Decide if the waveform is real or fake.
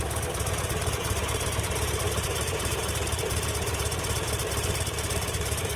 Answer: fake